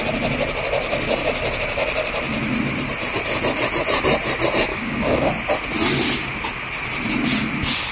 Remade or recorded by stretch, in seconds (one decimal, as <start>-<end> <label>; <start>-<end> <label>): 0.0-4.7 recorded; 4.7-5.3 remade; 5.3-7.9 recorded